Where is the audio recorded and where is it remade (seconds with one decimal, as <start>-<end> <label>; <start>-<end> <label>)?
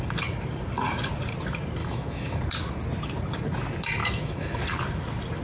0.0-1.8 recorded; 1.8-2.4 remade; 2.4-4.0 recorded; 4.0-4.6 remade; 4.6-5.4 recorded